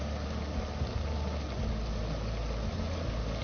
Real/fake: real